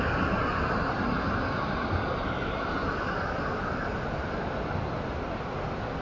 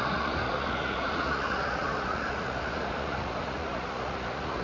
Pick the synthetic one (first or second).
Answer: second